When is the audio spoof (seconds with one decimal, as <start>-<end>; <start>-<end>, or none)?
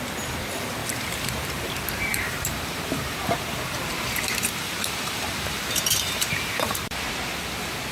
0.8-1.7; 2.1-6.8